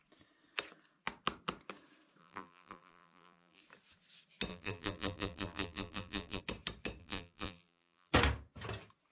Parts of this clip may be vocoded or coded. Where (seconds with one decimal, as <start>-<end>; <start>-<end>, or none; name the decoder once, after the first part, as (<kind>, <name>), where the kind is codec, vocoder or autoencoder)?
2.2-3.6 (vocoder, BigVGAN v2); 4.5-6.4; 7.0-8.1